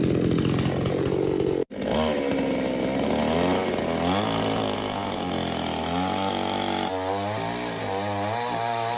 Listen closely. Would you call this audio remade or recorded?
recorded